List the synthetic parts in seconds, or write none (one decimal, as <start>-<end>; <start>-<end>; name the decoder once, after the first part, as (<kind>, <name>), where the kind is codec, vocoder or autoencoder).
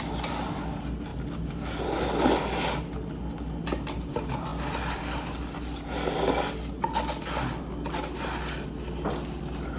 none